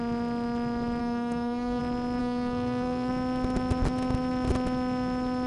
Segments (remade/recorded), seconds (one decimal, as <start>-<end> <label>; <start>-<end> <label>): 0.0-1.0 recorded; 1.0-1.8 remade; 1.8-2.2 recorded; 2.2-3.1 remade; 3.1-5.5 recorded